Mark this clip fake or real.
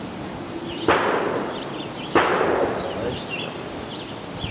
real